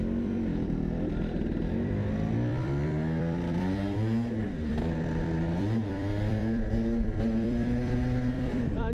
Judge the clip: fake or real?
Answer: fake